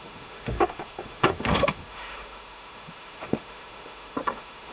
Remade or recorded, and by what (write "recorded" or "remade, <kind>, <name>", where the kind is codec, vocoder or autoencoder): remade, autoencoder, DAC-VAE